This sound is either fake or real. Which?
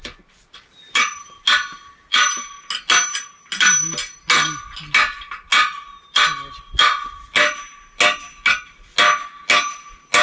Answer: real